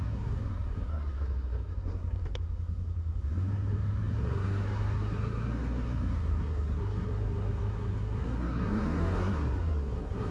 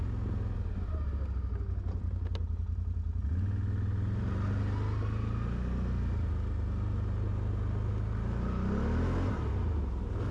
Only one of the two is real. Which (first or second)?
second